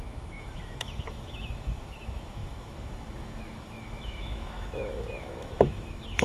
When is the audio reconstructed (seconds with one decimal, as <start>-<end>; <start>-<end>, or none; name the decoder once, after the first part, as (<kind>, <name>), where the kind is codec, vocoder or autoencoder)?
0.0-6.2 (autoencoder, DAC-VAE)

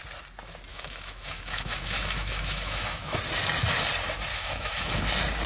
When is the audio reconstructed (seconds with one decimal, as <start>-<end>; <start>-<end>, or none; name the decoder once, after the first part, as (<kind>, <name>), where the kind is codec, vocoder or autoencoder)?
0.7-3.2 (autoencoder, DAC-VAE); 4.3-5.0